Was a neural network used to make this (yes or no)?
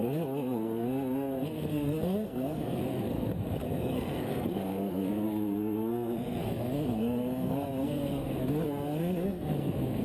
yes